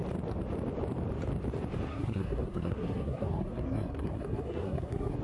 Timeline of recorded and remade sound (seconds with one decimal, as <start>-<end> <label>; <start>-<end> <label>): 0.0-1.9 recorded; 1.9-5.2 remade